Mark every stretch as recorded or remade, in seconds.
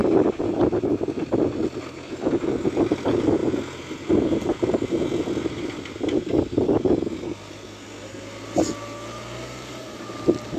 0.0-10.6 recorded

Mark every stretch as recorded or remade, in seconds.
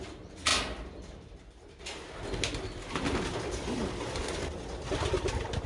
0.0-5.7 recorded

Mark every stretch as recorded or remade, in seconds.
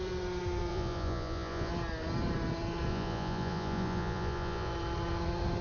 0.0-0.7 recorded; 0.7-1.7 remade; 1.7-2.9 recorded; 2.9-4.7 remade; 4.7-5.6 recorded